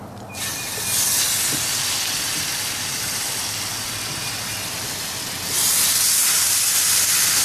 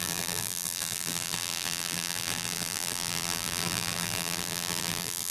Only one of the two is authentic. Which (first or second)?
first